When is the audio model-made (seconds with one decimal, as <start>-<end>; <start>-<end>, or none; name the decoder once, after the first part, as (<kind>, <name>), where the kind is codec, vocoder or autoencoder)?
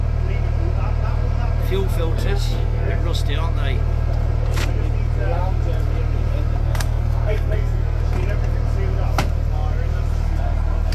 2.1-2.9 (codec, SNAC); 6.6-8.0